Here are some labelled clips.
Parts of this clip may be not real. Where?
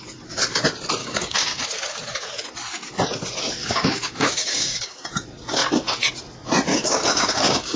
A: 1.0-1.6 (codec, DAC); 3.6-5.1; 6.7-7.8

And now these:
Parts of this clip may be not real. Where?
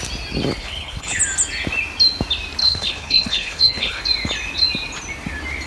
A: 0.6-1.2 (codec, HILCodec); 2.6-4.0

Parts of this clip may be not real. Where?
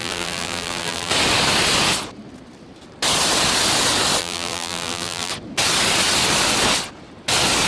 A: 0.0-1.1 (vocoder, BigVGAN v2); 4.2-5.3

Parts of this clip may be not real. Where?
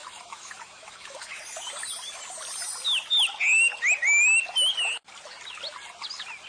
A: 0.0-1.4 (autoencoder, DAC-VAE)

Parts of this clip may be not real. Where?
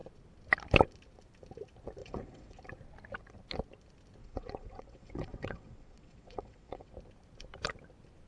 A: 2.0-2.6 (vocoder, WaveNeXt); 4.2-6.9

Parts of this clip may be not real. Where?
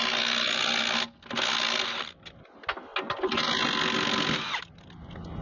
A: none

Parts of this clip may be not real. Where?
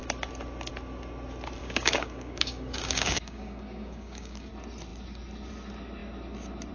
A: 1.6-4.5 (codec, DAC)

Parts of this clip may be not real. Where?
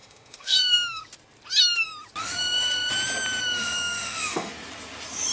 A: 0.0-1.0 (autoencoder, DAC-VAE); 2.2-2.9; 3.4-4.5